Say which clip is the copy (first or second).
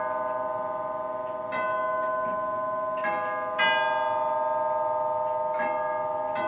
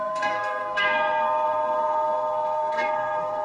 second